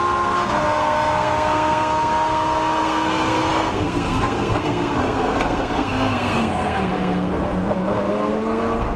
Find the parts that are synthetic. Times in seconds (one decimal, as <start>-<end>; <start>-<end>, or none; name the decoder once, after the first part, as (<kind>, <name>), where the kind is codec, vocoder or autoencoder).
0.0-9.0 (codec, SNAC)